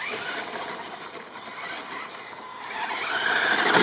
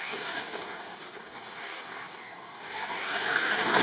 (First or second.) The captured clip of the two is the first